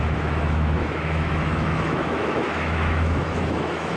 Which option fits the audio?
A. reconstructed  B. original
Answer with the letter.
A